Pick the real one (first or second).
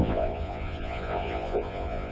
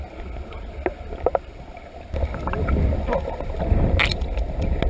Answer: second